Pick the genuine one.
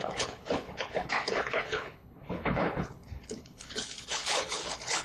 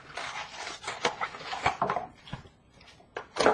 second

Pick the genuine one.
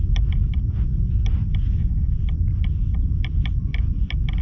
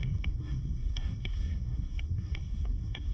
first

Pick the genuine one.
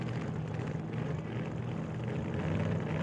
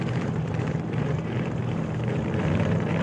first